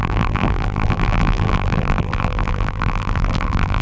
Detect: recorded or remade remade